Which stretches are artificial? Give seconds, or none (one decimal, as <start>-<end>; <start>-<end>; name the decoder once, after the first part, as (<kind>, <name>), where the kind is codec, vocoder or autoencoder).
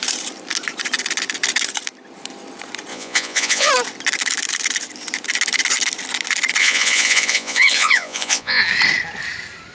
2.9-3.7 (vocoder, Vocos); 6.6-8.6